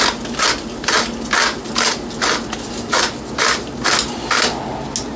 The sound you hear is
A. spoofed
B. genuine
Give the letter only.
B